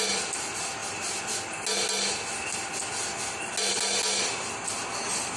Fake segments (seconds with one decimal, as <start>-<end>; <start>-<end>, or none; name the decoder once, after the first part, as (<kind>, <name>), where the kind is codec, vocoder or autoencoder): none